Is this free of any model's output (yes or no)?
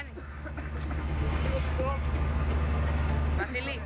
yes